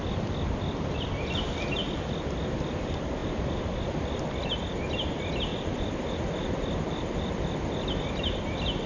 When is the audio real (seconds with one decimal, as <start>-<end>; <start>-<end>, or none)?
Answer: 0.0-3.2; 4.4-5.5; 7.4-8.9